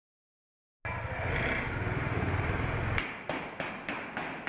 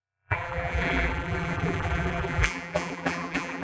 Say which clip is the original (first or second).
first